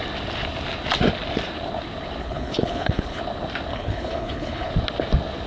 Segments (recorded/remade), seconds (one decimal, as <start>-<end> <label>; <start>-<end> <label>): 0.0-2.2 recorded; 2.2-3.2 remade; 3.2-3.7 recorded; 3.7-4.7 remade; 4.7-5.5 recorded